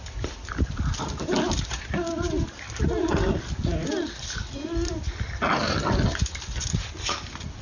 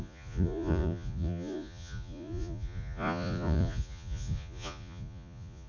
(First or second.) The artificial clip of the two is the second